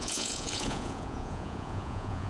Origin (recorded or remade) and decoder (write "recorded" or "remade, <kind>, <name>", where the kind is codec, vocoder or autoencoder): remade, vocoder, Vocos